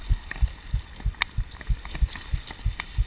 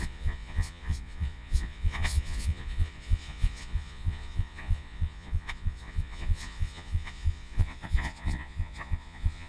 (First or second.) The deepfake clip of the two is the second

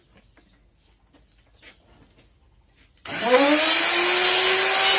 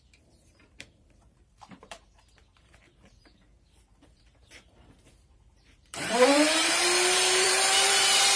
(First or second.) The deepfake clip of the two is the second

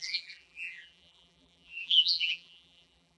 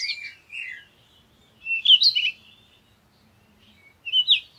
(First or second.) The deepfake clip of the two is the first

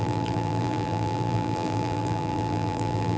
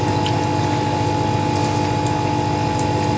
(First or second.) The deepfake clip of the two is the first